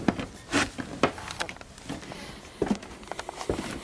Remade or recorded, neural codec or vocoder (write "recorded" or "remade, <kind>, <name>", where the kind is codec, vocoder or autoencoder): recorded